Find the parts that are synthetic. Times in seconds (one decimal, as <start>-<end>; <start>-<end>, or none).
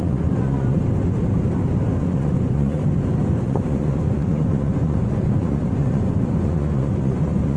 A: 0.0-0.8; 2.0-2.8; 3.4-7.6